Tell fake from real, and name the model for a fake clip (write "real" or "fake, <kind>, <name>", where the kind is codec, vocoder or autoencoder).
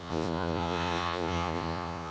fake, vocoder, Vocos